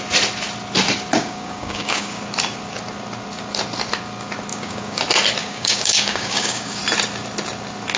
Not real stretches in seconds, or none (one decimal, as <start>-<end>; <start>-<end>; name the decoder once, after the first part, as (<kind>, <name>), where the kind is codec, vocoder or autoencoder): 1.2-2.2 (codec, DAC); 4.5-5.0; 5.4-6.8